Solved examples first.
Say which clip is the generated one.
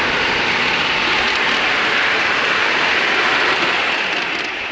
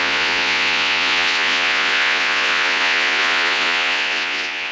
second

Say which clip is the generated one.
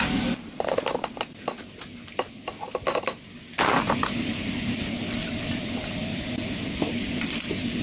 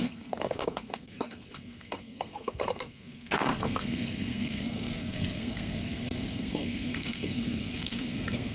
second